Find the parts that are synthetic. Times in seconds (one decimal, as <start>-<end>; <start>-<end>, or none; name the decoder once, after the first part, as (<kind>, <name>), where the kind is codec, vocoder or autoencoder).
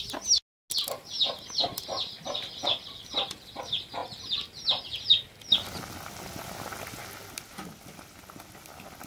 none